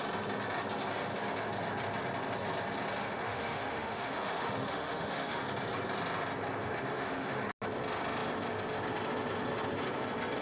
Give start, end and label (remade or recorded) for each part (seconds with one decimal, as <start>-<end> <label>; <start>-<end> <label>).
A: 0.0-3.0 recorded; 3.0-5.4 remade; 5.4-6.6 recorded; 6.6-7.4 remade; 7.4-10.4 recorded

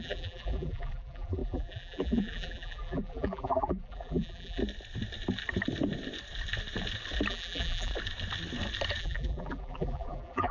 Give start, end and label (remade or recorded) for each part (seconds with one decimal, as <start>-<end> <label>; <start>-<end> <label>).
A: 0.0-4.6 remade; 4.6-7.3 recorded; 7.3-7.9 remade; 7.9-9.0 recorded; 9.0-10.5 remade

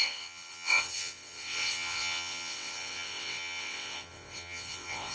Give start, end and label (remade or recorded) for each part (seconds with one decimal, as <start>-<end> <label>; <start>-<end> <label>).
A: 0.0-5.1 remade

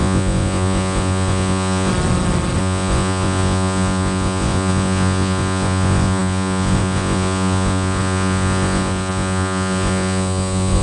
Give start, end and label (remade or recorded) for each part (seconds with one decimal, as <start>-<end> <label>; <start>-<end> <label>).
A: 0.0-1.9 remade; 1.9-2.6 recorded; 2.6-10.8 remade

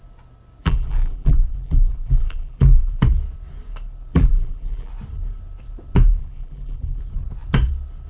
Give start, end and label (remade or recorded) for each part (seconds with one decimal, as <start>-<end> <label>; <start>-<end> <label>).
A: 0.0-0.6 recorded; 0.6-3.0 remade; 3.0-4.1 recorded; 4.1-4.9 remade; 4.9-6.2 recorded; 6.2-7.0 remade; 7.0-8.1 recorded

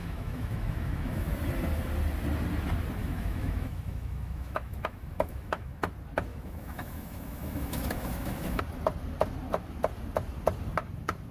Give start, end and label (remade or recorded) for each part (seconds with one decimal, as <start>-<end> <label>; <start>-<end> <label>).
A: 0.0-1.3 remade; 1.3-3.0 recorded; 3.0-5.8 remade; 5.8-6.3 recorded; 6.3-8.6 remade; 8.6-11.3 recorded

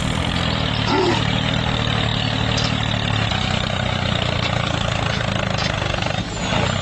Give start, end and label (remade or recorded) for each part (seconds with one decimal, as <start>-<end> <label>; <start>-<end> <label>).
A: 0.0-6.8 recorded